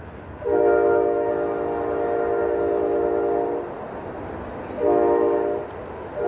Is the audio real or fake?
real